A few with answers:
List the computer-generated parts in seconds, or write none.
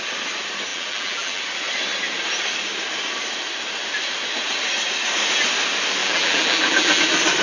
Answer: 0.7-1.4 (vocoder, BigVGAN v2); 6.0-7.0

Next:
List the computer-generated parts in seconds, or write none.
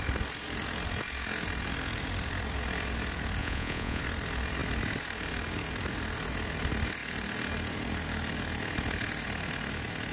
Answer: 3.4-4.0 (vocoder, Vocos)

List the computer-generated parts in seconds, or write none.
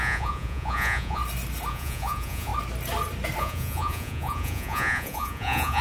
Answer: 0.0-1.2 (vocoder, Vocos); 1.7-2.5; 3.4-5.8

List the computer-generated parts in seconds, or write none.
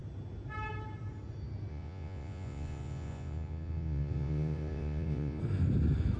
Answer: 1.7-5.4 (vocoder, Vocos)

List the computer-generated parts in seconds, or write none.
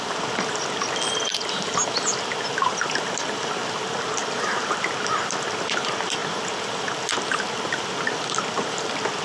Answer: 1.3-1.8 (vocoder, BigVGAN v2); 4.2-4.9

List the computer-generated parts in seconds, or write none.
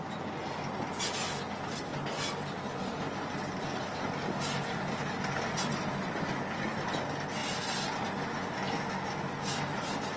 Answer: none